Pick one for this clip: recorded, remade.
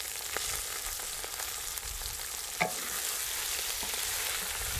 recorded